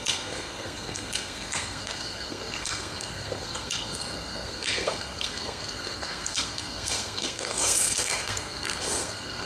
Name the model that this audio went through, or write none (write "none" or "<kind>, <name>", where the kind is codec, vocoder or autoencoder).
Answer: codec, SNAC